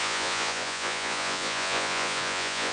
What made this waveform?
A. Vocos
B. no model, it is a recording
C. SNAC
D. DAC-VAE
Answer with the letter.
A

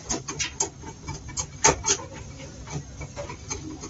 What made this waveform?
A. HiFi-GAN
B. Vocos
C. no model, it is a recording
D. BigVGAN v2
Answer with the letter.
C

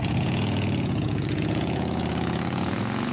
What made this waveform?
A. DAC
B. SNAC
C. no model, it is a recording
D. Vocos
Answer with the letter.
D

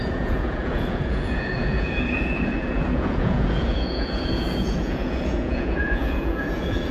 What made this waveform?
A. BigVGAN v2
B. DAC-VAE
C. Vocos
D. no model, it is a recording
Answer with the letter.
C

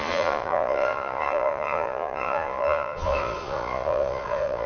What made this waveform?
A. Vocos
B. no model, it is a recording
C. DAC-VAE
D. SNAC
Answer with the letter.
A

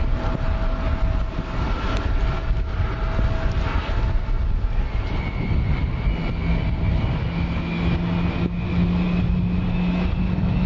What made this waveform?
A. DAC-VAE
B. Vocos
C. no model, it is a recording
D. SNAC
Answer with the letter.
C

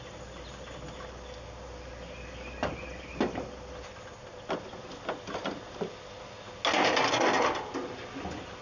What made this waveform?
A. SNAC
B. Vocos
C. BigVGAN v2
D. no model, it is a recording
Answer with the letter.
D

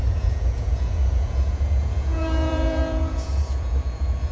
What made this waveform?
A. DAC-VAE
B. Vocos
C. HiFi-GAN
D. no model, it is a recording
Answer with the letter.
B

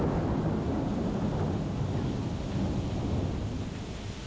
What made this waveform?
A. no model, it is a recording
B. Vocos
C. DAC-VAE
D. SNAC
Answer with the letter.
A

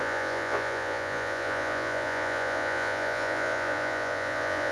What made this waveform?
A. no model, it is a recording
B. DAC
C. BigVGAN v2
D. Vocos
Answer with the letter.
D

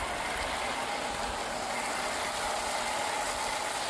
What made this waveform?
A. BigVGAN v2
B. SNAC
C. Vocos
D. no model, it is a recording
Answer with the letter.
D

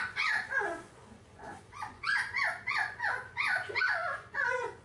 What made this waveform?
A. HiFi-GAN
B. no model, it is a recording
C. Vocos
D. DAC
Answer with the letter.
C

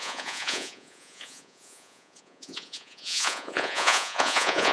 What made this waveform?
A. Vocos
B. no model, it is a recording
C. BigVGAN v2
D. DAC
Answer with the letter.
A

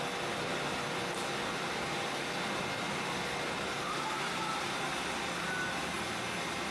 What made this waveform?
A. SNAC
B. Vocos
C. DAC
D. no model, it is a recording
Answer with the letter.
D